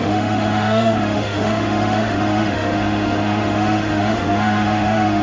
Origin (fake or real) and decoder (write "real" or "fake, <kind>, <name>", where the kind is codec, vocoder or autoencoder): fake, autoencoder, DAC-VAE